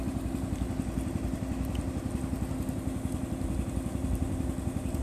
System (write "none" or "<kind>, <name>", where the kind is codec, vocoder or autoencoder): none